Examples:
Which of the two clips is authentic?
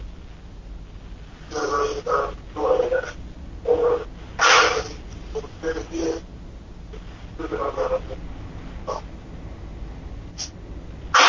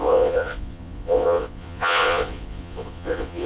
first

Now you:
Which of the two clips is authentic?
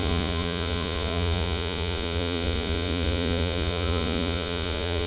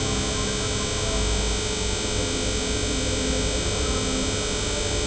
second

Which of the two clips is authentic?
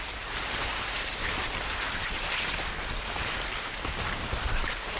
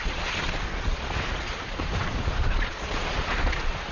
first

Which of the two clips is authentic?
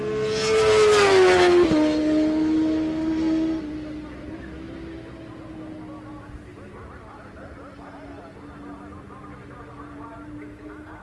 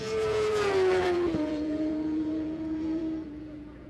first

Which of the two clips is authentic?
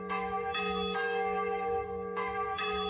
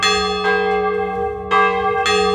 second